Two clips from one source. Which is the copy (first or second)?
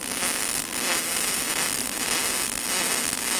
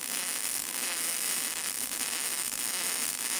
second